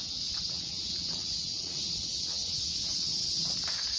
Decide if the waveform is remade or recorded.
remade